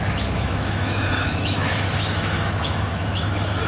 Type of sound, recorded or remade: remade